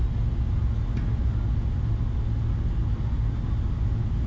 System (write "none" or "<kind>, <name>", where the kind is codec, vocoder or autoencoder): none